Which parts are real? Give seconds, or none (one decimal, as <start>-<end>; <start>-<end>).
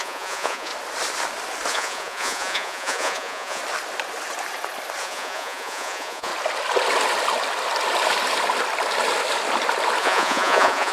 0.7-1.7; 3.6-5.0; 6.3-10.0